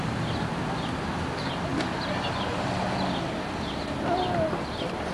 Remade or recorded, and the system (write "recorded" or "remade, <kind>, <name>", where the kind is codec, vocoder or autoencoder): recorded